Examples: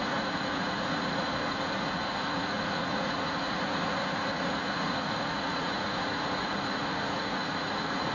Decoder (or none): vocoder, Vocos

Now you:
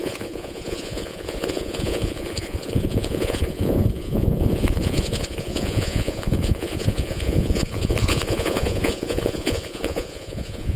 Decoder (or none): vocoder, Vocos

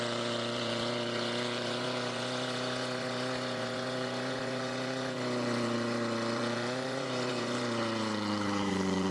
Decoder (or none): vocoder, Vocos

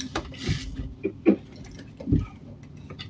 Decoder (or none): none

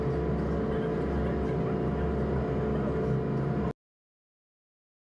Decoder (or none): none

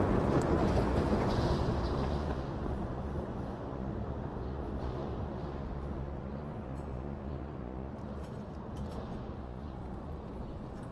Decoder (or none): vocoder, Vocos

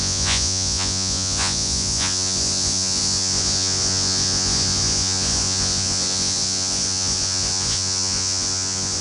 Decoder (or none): vocoder, Vocos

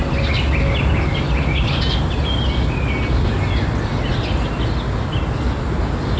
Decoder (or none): none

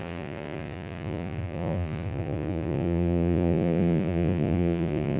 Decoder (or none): vocoder, Vocos